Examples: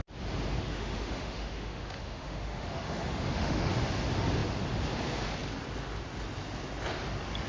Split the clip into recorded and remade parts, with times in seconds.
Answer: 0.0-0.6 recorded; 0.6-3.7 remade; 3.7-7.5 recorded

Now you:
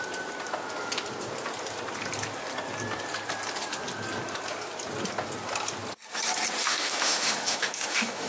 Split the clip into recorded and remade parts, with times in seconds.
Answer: 0.0-6.6 recorded; 6.6-8.3 remade

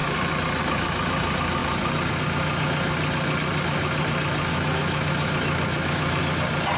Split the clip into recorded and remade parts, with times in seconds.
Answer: 0.0-4.5 recorded; 4.5-6.2 remade; 6.2-6.8 recorded

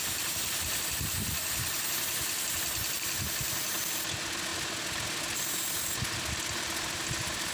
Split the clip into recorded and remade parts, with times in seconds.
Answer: 0.0-7.5 recorded

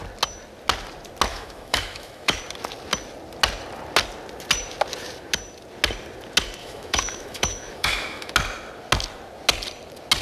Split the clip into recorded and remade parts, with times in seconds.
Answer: 0.0-1.3 recorded; 1.3-2.4 remade; 2.4-6.6 recorded; 6.6-8.3 remade; 8.3-10.2 recorded

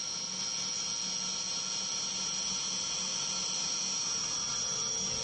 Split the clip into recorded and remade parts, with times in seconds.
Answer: 0.0-5.2 recorded